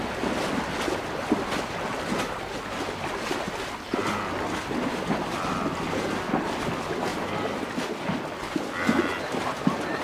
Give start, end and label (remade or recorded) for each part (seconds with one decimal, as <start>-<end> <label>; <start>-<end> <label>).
0.0-10.0 recorded